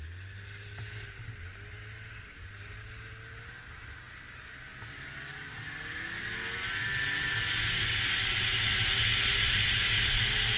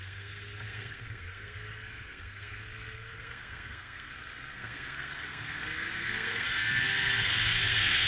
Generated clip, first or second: second